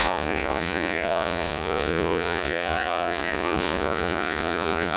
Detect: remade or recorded remade